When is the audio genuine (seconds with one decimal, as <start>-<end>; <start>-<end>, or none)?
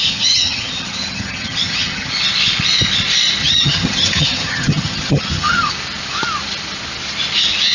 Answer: 2.1-3.4; 5.7-7.7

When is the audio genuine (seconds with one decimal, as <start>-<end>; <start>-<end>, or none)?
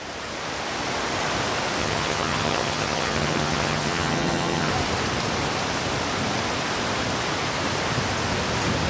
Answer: 0.0-1.8; 4.7-8.9